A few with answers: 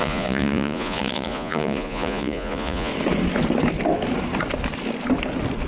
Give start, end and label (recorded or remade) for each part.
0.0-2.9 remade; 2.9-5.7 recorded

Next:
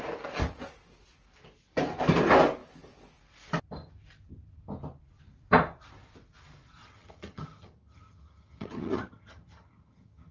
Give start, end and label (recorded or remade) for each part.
0.0-6.8 recorded; 6.8-10.3 remade

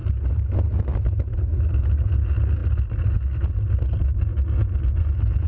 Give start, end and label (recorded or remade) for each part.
0.0-5.5 recorded